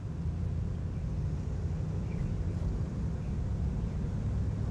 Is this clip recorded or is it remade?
recorded